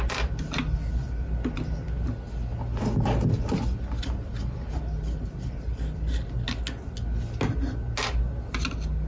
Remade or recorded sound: recorded